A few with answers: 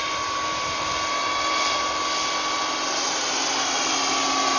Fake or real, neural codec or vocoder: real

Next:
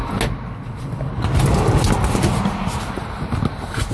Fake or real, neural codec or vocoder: real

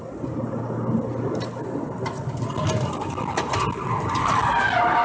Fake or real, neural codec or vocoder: real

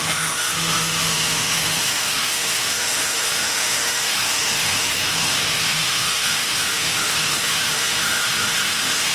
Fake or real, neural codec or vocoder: fake, autoencoder, DAC-VAE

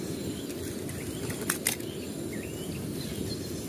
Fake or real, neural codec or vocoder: real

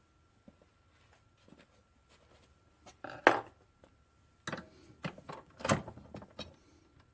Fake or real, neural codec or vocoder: real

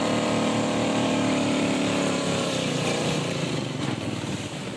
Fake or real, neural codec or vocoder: fake, vocoder, BigVGAN v2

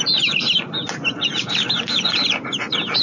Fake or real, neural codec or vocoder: real